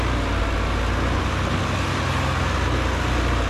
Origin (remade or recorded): recorded